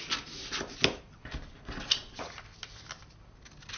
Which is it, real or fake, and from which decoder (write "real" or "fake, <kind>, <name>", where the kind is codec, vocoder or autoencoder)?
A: real